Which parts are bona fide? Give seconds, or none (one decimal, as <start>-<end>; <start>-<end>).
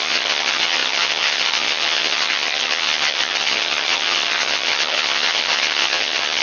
none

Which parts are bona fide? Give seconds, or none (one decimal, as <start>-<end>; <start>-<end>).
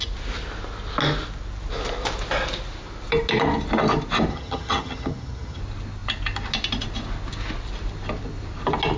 0.0-4.3; 5.6-9.0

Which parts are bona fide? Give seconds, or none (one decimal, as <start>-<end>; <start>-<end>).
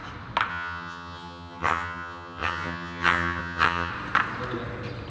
0.0-0.5; 3.9-5.1